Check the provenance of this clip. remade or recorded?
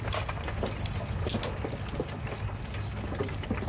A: recorded